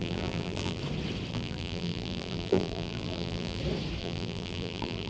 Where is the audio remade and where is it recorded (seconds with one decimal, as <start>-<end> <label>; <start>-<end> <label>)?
0.0-0.8 remade; 0.8-1.3 recorded; 1.3-3.6 remade; 3.6-4.0 recorded; 4.0-5.1 remade